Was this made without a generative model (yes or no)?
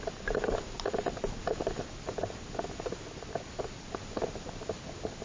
yes